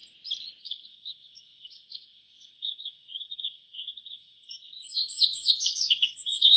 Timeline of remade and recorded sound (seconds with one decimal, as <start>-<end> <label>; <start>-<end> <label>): 0.0-0.6 recorded; 0.6-6.6 remade